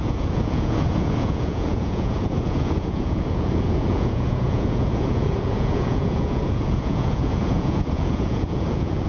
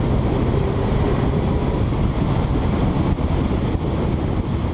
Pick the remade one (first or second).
first